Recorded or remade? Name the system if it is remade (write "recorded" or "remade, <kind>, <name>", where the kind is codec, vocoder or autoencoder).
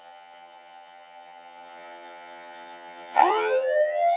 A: remade, vocoder, HiFi-GAN